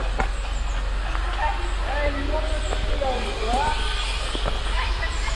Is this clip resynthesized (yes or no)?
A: no